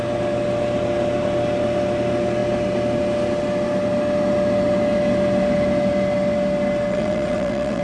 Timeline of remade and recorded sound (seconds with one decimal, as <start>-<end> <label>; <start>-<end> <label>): 0.0-6.9 recorded; 6.9-7.8 remade